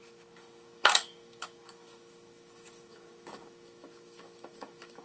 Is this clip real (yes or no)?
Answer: no